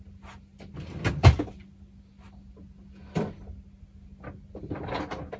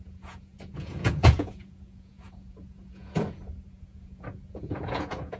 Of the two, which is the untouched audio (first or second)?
first